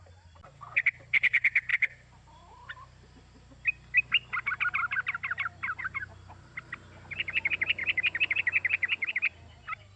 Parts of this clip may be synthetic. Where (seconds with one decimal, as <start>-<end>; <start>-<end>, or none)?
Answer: none